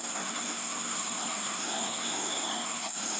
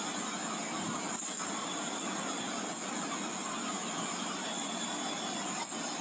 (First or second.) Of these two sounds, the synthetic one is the first